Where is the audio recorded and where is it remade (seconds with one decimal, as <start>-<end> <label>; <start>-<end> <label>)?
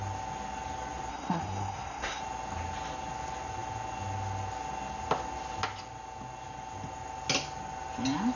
0.0-1.1 recorded; 1.1-2.2 remade; 2.2-8.4 recorded